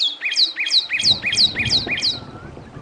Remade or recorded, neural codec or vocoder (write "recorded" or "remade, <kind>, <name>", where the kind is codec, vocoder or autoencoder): recorded